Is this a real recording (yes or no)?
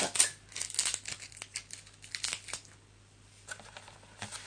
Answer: yes